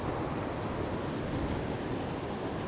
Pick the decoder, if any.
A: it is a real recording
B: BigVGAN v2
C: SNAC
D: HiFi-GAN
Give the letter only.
A